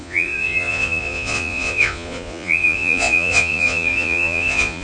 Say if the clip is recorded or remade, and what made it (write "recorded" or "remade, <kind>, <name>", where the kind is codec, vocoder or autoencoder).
remade, vocoder, Vocos